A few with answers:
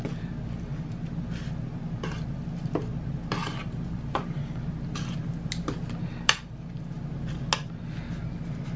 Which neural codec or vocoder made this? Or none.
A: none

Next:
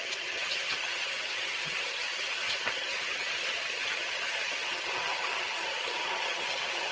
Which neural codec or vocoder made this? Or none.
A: vocoder, HiFi-GAN